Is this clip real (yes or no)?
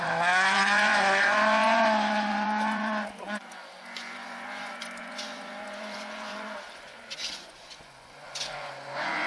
no